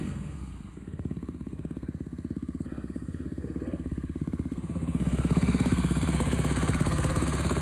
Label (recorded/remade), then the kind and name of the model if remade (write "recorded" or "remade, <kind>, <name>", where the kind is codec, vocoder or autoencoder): remade, codec, SNAC